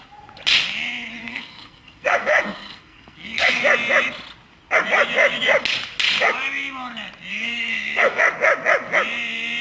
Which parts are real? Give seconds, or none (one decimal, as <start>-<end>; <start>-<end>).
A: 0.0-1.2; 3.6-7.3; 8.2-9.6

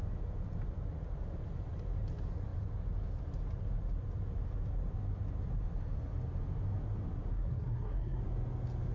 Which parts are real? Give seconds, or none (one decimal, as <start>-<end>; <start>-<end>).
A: 0.0-7.3; 8.2-8.9

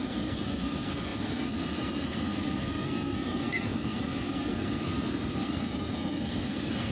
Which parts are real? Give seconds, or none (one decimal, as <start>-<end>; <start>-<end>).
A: none

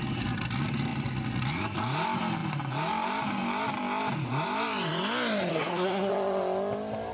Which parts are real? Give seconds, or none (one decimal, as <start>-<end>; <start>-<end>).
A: 0.0-5.5; 6.1-7.1

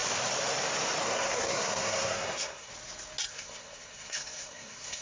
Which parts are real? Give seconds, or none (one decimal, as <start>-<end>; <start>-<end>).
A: 0.0-1.0; 2.7-3.3

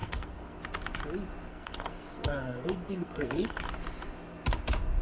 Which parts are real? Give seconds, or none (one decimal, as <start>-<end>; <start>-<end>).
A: 0.6-1.5; 3.6-5.0

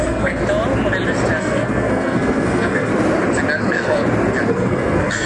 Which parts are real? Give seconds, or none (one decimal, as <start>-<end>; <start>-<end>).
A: 0.4-1.4; 2.9-3.6; 4.0-4.5